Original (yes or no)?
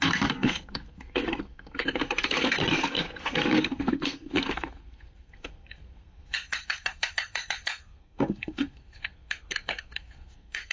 no